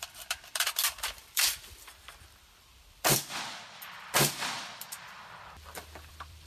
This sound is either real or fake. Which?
fake